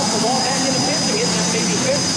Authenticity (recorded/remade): recorded